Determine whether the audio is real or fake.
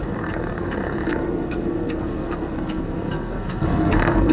fake